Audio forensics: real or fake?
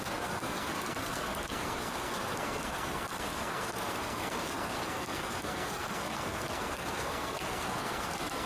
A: fake